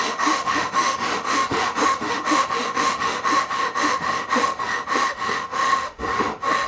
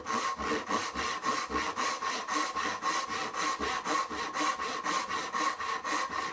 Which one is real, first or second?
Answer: second